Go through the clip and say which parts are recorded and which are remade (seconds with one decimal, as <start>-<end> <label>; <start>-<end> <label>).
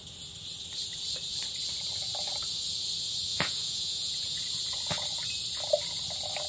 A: 0.0-3.3 recorded; 3.3-4.4 remade; 4.4-6.5 recorded